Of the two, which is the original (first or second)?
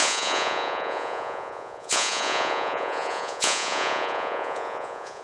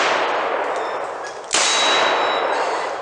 second